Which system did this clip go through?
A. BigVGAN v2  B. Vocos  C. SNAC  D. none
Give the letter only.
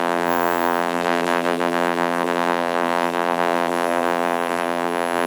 A